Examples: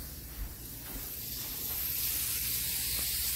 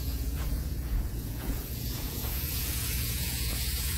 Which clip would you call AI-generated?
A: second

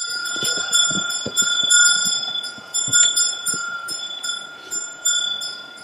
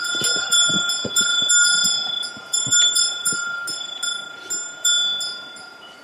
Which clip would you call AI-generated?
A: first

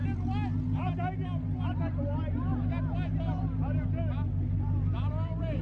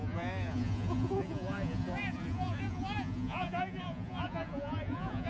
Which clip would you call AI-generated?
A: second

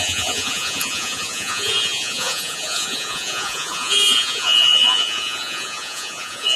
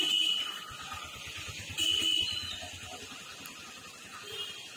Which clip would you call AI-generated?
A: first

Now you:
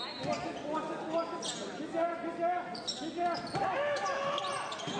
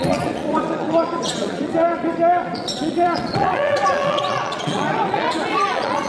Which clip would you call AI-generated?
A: second